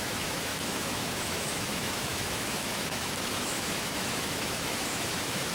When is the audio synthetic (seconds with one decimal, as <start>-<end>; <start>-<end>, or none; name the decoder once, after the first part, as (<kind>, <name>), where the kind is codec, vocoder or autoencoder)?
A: 0.0-5.5 (autoencoder, DAC-VAE)